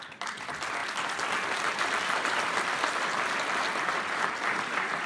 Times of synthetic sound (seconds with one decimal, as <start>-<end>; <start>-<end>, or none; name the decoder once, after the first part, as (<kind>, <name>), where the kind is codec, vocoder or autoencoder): none